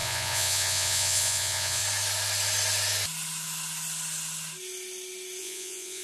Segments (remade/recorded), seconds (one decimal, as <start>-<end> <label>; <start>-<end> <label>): 0.0-1.8 remade; 1.8-5.4 recorded; 5.4-6.0 remade